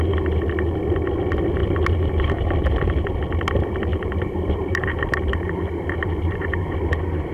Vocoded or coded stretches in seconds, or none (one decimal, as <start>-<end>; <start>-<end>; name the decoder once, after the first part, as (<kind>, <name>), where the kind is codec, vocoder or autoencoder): 1.6-3.2 (vocoder, BigVGAN v2); 3.9-6.7